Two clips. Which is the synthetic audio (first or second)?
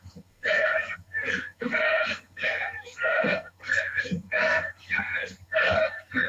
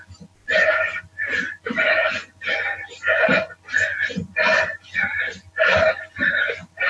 first